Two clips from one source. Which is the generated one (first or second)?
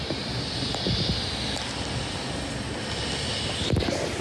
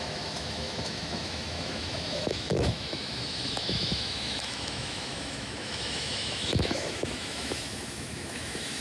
second